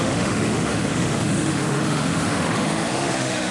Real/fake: fake